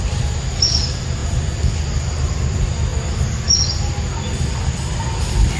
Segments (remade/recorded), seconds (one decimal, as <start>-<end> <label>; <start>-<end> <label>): 0.0-5.6 recorded